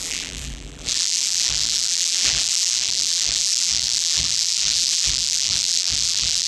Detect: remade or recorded remade